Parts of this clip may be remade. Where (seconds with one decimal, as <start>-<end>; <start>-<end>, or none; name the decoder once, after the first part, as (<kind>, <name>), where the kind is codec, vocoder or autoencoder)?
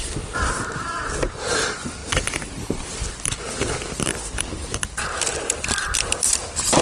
0.0-2.0 (vocoder, BigVGAN v2); 2.5-6.8